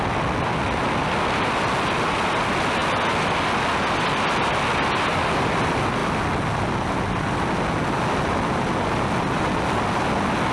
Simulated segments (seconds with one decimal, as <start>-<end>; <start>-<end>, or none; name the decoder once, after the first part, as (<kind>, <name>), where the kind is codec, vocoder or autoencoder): none